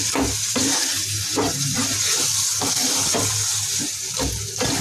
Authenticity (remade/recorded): recorded